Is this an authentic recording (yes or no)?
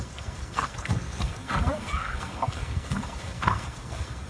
no